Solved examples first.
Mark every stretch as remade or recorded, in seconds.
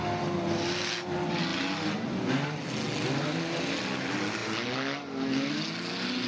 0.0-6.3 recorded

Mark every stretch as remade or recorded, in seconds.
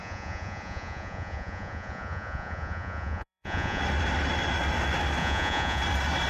0.0-3.8 remade; 3.8-5.2 recorded; 5.2-5.8 remade; 5.8-6.3 recorded